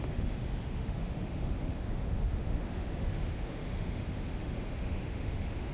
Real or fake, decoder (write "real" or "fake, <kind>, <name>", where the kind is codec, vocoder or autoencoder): fake, autoencoder, DAC-VAE